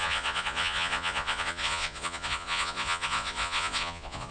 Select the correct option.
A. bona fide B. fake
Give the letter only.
B